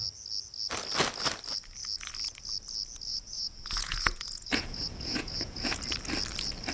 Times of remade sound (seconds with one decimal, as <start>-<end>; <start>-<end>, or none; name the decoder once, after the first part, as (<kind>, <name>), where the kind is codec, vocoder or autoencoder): 3.1-5.8 (vocoder, Vocos)